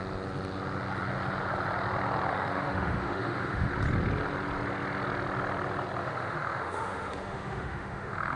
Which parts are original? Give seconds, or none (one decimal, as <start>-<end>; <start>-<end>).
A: 0.0-2.3; 3.7-6.0